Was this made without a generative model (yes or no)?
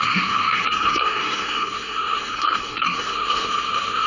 no